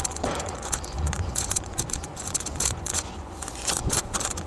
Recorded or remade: remade